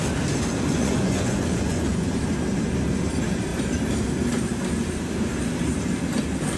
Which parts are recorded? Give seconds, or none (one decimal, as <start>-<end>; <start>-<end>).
0.0-0.7; 2.2-6.6